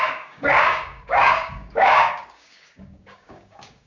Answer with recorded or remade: remade